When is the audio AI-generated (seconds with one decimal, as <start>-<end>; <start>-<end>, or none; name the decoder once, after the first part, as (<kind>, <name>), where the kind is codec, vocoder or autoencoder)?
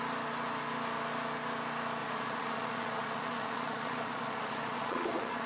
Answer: 2.0-5.5 (vocoder, Vocos)